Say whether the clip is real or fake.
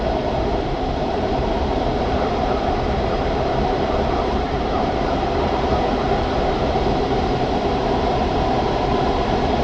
fake